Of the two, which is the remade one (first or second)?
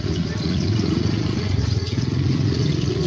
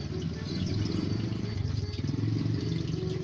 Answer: first